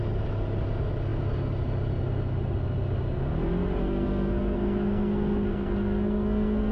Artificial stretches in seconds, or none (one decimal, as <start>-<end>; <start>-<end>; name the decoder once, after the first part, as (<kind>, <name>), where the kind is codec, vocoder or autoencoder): 3.8-6.7 (codec, SNAC)